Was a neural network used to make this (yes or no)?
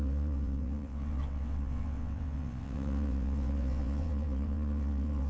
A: yes